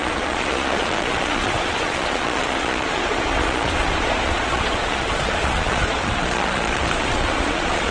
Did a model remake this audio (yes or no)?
yes